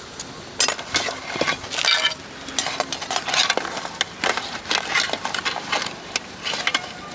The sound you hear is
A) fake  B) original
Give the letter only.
B